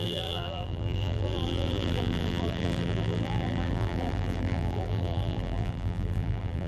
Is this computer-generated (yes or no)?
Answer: yes